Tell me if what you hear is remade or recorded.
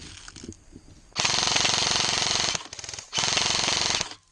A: recorded